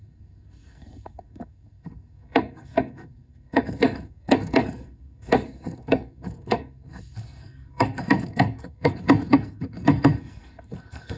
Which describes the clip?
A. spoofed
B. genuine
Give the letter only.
A